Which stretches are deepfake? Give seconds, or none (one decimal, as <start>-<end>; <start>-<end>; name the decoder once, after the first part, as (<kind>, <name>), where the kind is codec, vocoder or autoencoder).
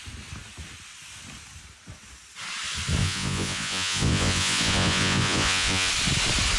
3.0-5.9 (vocoder, Vocos)